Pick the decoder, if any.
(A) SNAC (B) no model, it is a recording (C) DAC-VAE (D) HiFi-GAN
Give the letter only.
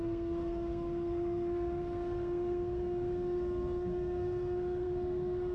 A